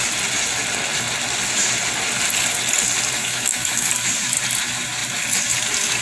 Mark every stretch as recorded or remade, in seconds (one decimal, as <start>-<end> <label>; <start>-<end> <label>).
0.0-3.2 recorded; 3.2-3.9 remade; 3.9-6.0 recorded